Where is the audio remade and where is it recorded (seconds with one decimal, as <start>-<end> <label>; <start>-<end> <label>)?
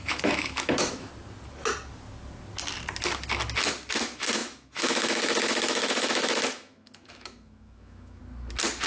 0.0-1.1 remade; 1.1-4.0 recorded; 4.0-8.2 remade; 8.2-8.9 recorded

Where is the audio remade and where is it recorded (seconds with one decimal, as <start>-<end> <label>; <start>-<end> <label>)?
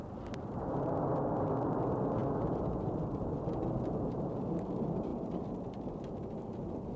0.0-7.0 recorded